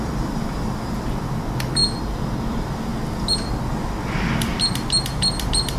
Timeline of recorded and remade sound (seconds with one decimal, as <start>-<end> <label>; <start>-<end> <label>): 0.0-1.8 remade; 1.8-2.4 recorded; 2.4-2.9 remade; 2.9-4.0 recorded; 4.0-4.5 remade; 4.5-5.2 recorded; 5.2-5.8 remade